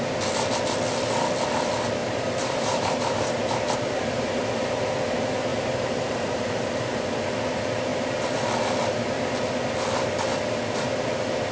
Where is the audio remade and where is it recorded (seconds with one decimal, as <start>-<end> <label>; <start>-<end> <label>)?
0.0-2.0 recorded; 2.0-4.9 remade; 4.9-5.5 recorded; 5.5-7.1 remade; 7.1-11.5 recorded